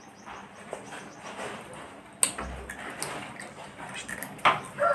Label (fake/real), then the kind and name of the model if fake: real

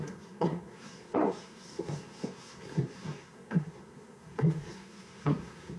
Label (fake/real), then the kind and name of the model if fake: fake, codec, SNAC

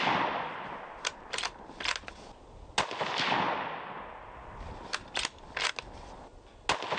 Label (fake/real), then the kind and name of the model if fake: real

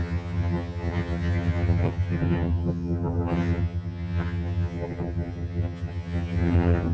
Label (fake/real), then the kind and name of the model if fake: fake, vocoder, HiFi-GAN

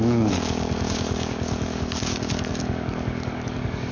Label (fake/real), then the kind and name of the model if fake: fake, codec, DAC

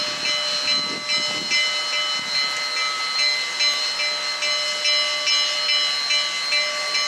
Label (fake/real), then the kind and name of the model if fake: real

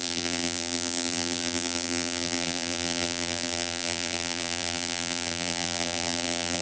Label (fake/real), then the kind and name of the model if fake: fake, vocoder, BigVGAN v2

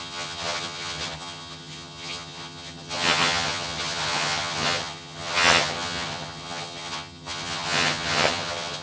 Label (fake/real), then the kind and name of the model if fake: fake, vocoder, HiFi-GAN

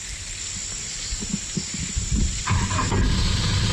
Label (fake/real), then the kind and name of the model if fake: real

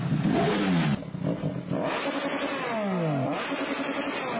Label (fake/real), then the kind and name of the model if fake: real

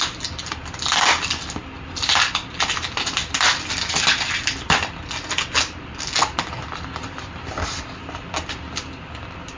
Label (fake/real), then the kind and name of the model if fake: real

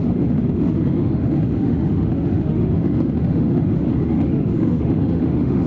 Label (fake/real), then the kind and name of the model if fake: fake, autoencoder, DAC-VAE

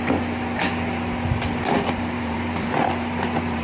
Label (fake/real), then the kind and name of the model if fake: fake, vocoder, BigVGAN v2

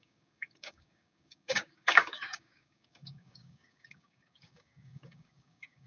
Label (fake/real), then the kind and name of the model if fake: fake, codec, DAC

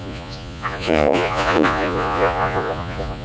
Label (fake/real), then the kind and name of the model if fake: fake, vocoder, Vocos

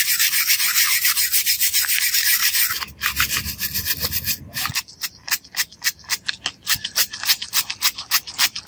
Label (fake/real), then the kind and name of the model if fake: real